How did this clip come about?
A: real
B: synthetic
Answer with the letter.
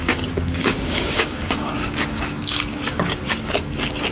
B